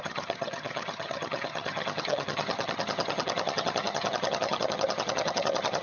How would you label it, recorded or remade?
remade